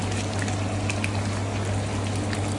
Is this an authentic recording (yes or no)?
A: yes